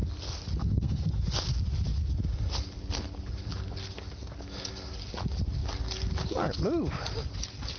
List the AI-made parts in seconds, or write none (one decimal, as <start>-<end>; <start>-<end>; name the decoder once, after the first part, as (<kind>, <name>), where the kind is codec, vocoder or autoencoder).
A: 0.6-1.2 (codec, SNAC)